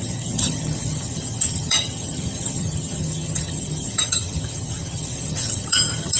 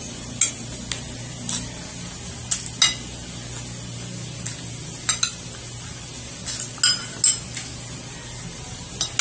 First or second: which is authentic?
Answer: second